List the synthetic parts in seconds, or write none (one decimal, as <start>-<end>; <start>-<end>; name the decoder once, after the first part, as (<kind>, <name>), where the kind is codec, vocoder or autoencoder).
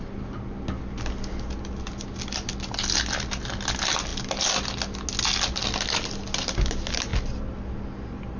none